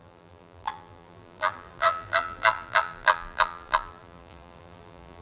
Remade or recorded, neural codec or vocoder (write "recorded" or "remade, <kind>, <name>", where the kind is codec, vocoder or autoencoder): remade, vocoder, BigVGAN v2